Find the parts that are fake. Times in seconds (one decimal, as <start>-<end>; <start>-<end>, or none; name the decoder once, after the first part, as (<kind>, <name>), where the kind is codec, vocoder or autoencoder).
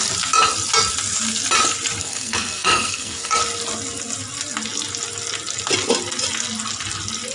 2.0-3.4 (codec, SNAC)